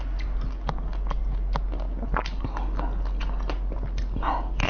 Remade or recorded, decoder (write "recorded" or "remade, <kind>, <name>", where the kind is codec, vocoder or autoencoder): recorded